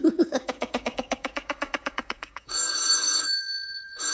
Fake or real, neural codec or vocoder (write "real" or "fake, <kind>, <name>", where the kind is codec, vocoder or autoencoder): fake, codec, DAC